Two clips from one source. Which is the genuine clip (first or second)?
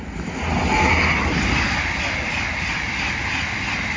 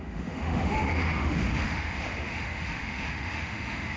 first